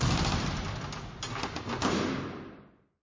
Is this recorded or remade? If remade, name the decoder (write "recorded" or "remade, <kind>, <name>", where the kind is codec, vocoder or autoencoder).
recorded